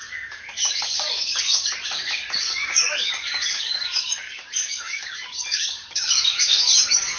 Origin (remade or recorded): remade